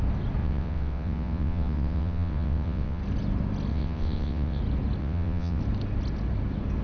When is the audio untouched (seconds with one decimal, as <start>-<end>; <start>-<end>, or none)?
0.0-0.4; 3.0-3.7; 4.6-5.0; 5.6-6.8